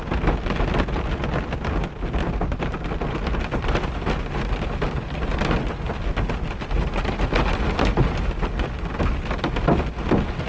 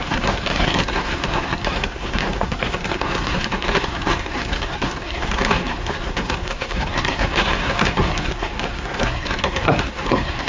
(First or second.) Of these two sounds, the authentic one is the first